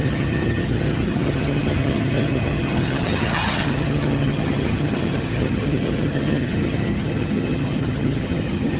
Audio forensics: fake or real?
fake